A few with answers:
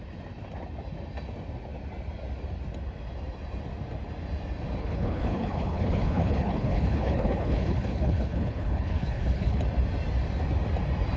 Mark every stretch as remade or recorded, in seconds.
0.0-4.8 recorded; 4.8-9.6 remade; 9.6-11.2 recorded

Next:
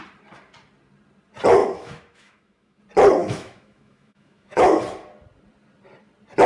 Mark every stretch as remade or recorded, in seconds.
0.0-1.6 recorded; 1.6-2.8 remade; 2.8-3.2 recorded; 3.2-4.8 remade; 4.8-6.5 recorded

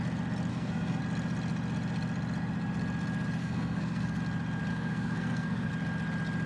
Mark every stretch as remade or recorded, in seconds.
0.0-0.5 recorded; 0.5-1.0 remade; 1.0-3.4 recorded; 3.4-4.2 remade; 4.2-4.7 recorded; 4.7-5.7 remade; 5.7-6.5 recorded

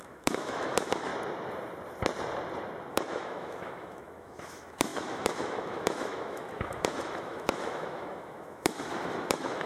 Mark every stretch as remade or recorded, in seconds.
0.0-1.1 remade; 1.1-2.9 recorded; 2.9-9.7 remade

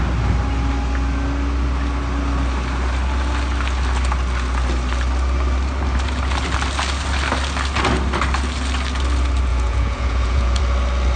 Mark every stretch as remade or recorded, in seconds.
0.0-9.5 recorded; 9.5-10.6 remade; 10.6-11.2 recorded

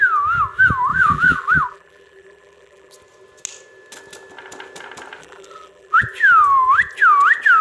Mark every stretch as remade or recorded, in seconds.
0.0-0.9 recorded; 0.9-2.9 remade; 2.9-5.2 recorded; 5.2-6.0 remade; 6.0-7.6 recorded